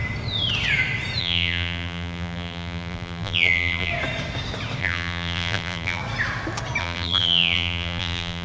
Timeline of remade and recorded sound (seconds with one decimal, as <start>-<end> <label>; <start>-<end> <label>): 0.0-1.2 recorded; 1.2-3.9 remade; 3.9-4.8 recorded; 4.8-6.0 remade; 6.0-6.8 recorded; 6.8-8.4 remade